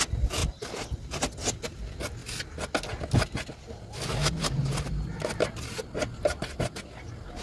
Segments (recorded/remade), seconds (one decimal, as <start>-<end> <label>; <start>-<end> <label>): 0.0-0.4 recorded; 0.4-1.8 remade; 1.8-7.4 recorded